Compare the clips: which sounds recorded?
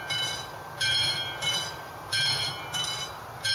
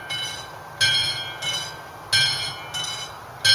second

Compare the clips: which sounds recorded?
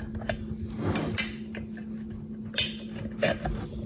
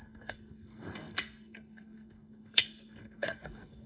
first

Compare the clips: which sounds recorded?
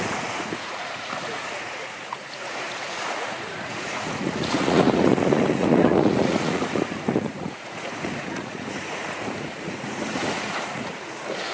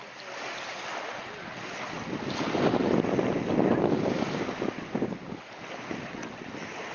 second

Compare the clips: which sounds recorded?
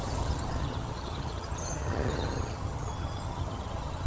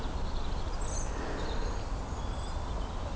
second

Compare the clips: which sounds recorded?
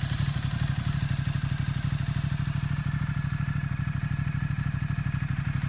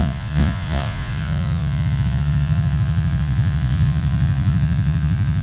first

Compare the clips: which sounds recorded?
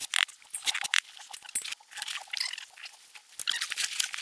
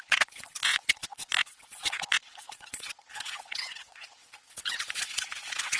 first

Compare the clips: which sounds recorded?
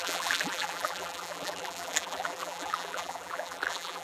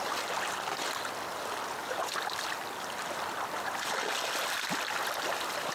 second